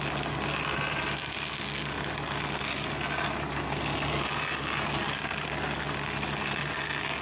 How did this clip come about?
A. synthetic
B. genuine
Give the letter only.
B